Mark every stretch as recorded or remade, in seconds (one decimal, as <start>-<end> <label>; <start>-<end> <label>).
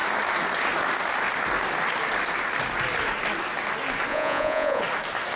0.0-4.1 recorded; 4.1-4.8 remade; 4.8-5.4 recorded